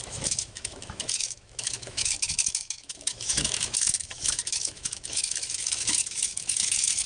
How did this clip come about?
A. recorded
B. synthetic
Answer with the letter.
B